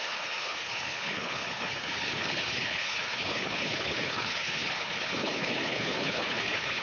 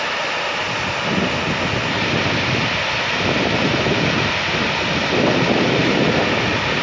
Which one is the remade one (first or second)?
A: first